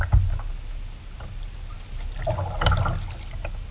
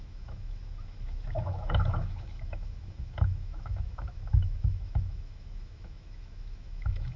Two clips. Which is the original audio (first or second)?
first